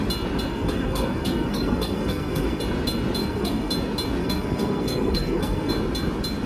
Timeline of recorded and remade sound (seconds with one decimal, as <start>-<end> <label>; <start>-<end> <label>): 0.0-0.5 recorded; 0.5-2.6 remade; 2.6-3.2 recorded; 3.2-3.7 remade; 3.7-4.2 recorded; 4.2-5.7 remade; 5.7-6.5 recorded